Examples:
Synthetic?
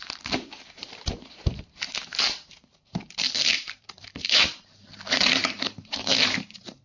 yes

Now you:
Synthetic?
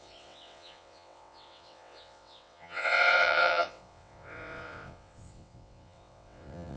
yes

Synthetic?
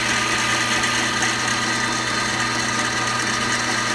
no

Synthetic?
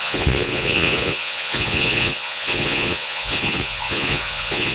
yes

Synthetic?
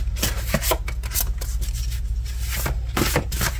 no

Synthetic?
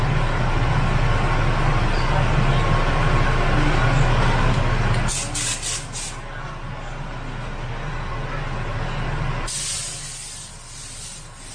no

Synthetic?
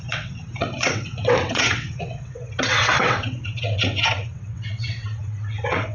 yes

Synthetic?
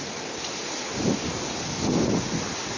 no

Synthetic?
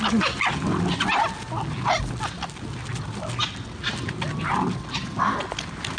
no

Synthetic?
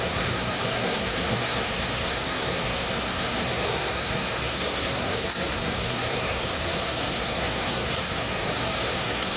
yes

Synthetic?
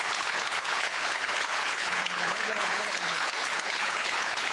yes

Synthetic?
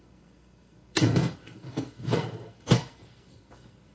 yes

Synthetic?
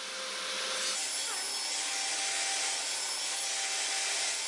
no